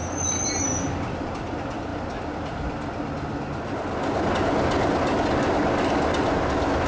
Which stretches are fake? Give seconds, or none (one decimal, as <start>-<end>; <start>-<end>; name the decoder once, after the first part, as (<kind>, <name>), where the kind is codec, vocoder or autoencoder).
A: none